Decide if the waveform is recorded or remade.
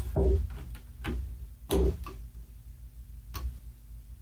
recorded